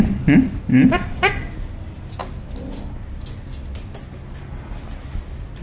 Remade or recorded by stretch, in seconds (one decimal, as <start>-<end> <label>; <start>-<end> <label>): 0.0-0.7 recorded; 0.7-1.3 remade; 1.3-5.6 recorded